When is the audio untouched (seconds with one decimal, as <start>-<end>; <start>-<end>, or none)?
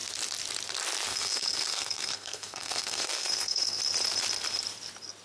0.0-1.1; 3.8-5.2